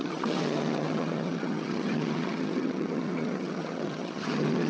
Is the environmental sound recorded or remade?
remade